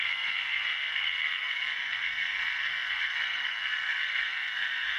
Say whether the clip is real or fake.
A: fake